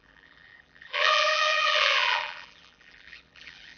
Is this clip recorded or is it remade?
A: remade